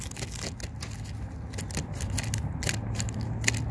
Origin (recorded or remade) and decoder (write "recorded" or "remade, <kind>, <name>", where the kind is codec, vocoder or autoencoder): recorded